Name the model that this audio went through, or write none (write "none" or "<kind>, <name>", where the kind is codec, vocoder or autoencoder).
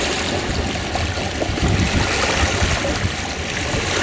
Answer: none